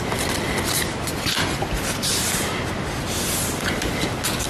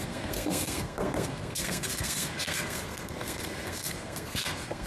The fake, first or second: second